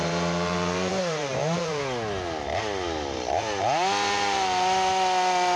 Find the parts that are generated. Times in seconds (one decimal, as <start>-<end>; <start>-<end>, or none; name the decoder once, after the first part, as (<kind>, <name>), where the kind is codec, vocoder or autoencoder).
0.0-1.8 (vocoder, BigVGAN v2)